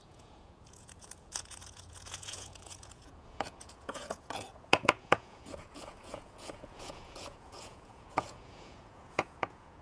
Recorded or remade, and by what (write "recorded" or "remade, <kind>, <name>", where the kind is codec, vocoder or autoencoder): remade, vocoder, Vocos